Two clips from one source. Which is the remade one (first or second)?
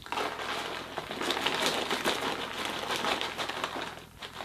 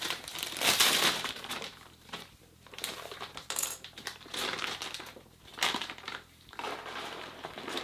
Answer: second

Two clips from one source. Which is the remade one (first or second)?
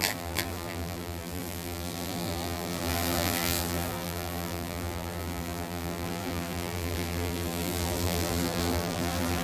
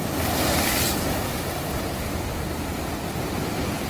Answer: first